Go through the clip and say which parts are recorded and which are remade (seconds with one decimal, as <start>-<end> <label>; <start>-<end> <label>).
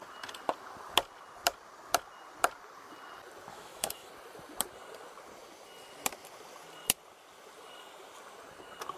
0.0-3.5 recorded; 3.5-4.1 remade; 4.1-9.0 recorded